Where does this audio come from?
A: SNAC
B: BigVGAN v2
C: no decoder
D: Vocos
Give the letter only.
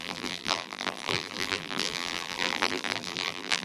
B